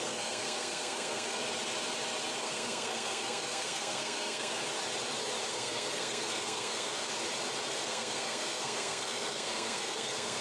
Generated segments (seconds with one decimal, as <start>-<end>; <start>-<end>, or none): 0.0-1.4; 2.4-4.6; 5.5-7.1; 7.7-10.4